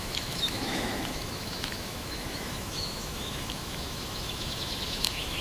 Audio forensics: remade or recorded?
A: remade